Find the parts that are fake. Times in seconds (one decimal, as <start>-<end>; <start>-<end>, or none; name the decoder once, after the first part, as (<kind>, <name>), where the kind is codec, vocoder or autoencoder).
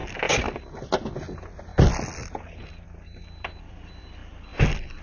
none